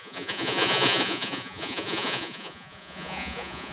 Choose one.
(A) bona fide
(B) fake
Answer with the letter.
B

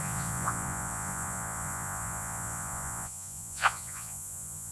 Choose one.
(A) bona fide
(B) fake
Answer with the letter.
B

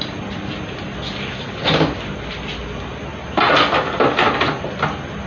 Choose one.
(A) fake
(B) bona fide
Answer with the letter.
B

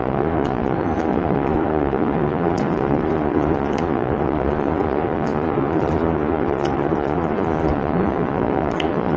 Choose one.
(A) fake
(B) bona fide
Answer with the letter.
A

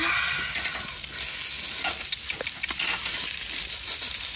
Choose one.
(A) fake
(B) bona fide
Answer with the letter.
B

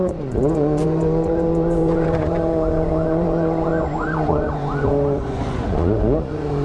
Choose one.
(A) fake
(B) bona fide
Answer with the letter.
A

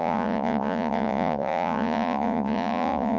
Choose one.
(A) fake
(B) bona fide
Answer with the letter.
A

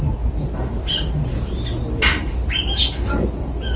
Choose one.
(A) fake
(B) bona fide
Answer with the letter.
B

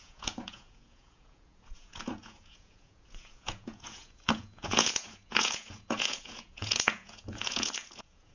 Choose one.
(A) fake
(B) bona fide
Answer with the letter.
A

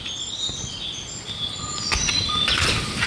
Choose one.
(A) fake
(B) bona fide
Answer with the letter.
B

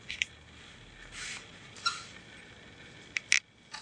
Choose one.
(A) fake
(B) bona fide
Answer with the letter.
B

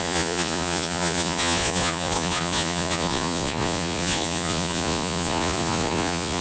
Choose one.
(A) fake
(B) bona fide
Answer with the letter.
A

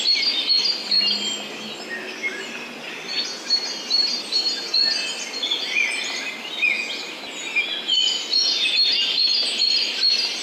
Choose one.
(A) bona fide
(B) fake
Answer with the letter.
A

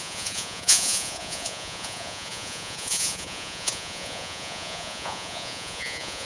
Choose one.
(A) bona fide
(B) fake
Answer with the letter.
B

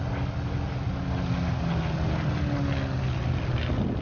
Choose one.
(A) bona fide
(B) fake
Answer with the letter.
A